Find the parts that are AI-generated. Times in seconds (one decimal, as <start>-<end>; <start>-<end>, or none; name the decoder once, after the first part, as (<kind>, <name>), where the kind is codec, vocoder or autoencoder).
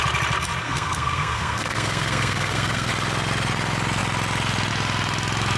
0.6-2.9 (codec, SNAC)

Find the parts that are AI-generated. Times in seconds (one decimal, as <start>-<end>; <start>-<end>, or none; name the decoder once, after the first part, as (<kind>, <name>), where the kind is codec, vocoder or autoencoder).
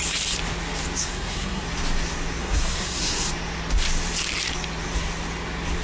1.0-1.6 (codec, SNAC); 2.4-3.3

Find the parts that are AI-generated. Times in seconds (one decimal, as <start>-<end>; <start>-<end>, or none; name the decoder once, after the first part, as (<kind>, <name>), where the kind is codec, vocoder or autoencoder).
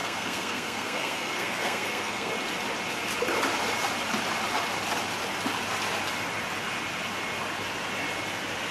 0.0-2.3 (codec, SNAC)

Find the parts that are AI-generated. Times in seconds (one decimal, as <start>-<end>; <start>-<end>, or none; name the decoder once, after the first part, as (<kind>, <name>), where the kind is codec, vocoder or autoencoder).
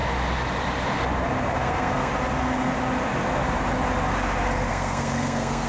1.5-2.1 (codec, SNAC); 4.7-5.7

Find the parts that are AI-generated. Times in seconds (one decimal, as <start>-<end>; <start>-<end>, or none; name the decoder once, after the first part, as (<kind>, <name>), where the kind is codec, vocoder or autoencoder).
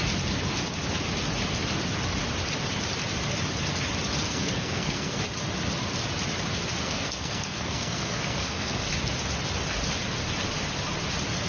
4.3-5.2 (codec, SNAC); 6.8-8.9